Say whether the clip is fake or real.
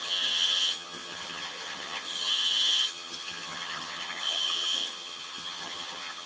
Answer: fake